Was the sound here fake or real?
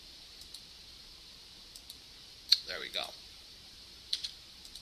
fake